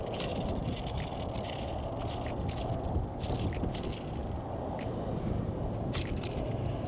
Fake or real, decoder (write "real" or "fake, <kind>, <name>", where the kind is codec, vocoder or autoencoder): real